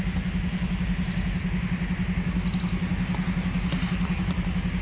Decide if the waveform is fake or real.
real